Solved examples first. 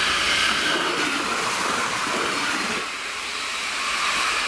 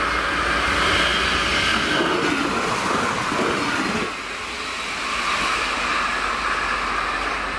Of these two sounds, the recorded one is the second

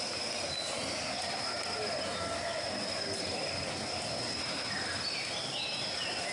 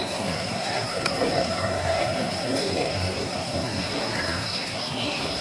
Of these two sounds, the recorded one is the first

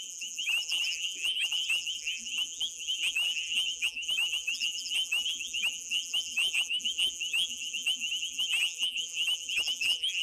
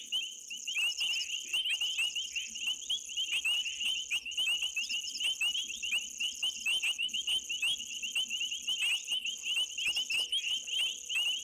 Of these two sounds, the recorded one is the second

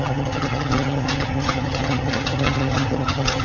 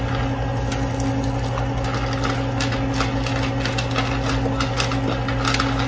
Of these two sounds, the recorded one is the second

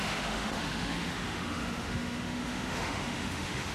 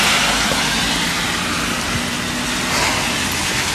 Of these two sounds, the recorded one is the second